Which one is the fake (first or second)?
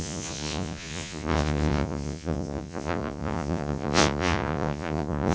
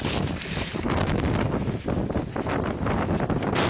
first